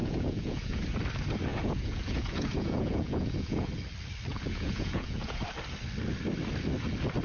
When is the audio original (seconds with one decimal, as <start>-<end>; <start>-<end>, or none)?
0.8-1.5; 3.7-4.3; 5.4-7.2